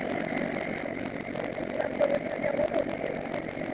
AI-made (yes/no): no